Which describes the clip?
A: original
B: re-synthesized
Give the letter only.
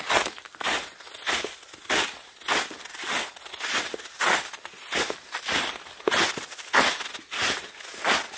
A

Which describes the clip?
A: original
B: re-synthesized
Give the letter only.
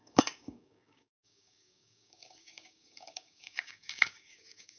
B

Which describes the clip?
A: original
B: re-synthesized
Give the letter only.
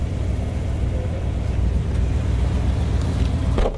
A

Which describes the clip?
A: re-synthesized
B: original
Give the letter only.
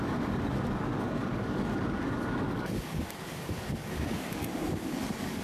A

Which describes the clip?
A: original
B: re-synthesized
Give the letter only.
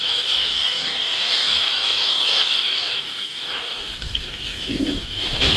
B